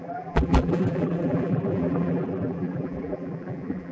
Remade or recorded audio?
remade